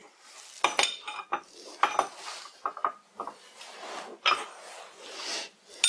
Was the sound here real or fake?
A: real